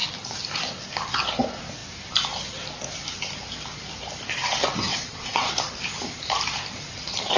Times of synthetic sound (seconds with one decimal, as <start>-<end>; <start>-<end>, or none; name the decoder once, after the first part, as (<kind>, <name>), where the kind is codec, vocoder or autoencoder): 4.9-5.5 (vocoder, WaveNeXt)